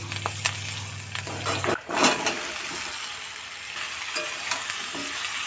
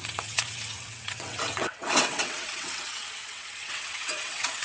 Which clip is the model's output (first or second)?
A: second